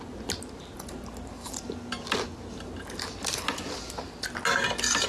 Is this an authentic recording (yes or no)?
yes